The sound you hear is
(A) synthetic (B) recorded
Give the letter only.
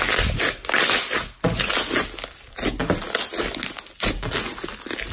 B